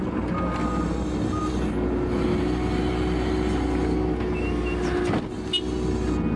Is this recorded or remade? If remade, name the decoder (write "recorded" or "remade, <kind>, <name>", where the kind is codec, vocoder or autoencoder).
recorded